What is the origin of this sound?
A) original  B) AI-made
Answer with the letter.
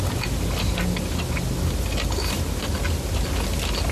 A